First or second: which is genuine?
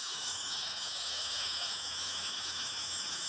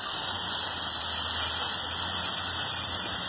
second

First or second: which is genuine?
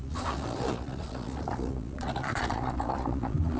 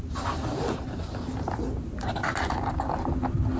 second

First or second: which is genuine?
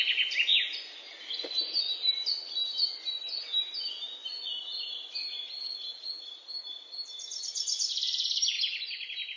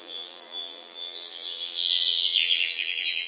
first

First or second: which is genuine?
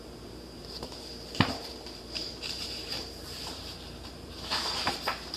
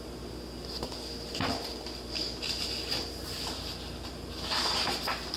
second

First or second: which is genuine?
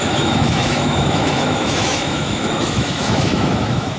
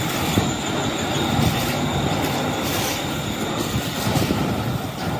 second